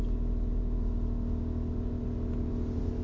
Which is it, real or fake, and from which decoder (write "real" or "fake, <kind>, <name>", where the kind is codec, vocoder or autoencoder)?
real